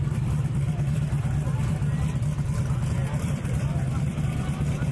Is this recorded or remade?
remade